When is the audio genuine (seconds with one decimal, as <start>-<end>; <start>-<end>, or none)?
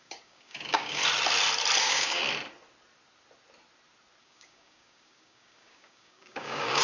1.0-1.8; 2.2-4.2